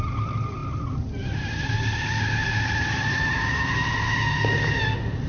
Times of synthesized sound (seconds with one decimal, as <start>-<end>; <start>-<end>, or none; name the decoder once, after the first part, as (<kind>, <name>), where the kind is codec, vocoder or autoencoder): none